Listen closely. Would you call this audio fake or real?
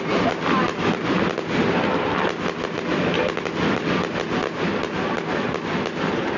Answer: real